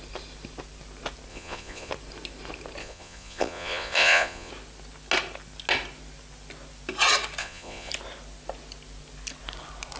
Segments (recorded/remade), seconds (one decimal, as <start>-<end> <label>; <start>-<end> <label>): 0.0-1.3 recorded; 1.3-1.9 remade; 1.9-2.8 recorded; 2.8-4.5 remade; 4.5-7.4 recorded; 7.4-7.9 remade; 7.9-10.0 recorded